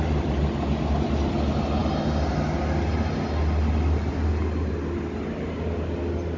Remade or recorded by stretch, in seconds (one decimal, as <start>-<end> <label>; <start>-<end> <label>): 0.0-6.4 recorded